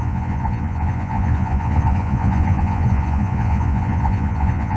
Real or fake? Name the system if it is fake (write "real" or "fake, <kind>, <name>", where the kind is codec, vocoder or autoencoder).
fake, vocoder, Vocos